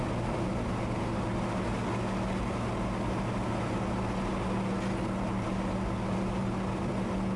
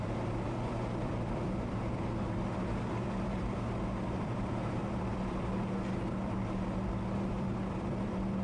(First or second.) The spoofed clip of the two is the second